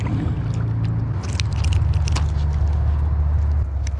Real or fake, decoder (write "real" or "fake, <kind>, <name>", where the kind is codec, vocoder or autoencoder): real